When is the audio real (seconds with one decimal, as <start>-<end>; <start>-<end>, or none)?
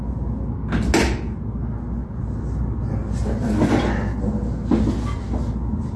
0.0-6.0